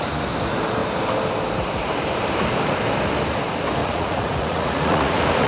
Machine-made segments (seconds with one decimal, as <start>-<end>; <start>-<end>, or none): 3.8-5.5

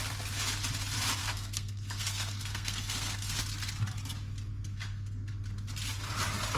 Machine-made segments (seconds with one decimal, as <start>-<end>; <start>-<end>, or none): 1.2-3.4; 4.7-5.3

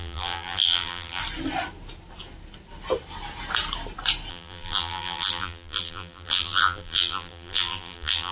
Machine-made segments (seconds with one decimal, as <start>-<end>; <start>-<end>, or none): 0.0-1.2; 4.3-8.3

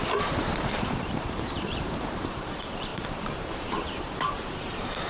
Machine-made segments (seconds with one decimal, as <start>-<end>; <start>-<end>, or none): 0.0-5.1

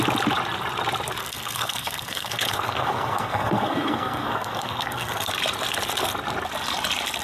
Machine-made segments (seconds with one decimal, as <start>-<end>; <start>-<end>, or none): 1.2-5.3